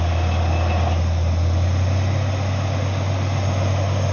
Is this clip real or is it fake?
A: real